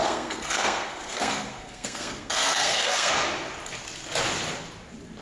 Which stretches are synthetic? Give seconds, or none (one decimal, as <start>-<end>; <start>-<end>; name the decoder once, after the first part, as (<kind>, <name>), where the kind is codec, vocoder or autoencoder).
0.0-3.1 (codec, SNAC)